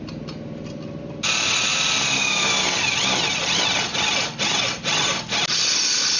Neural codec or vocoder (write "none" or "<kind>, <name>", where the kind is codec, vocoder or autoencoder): none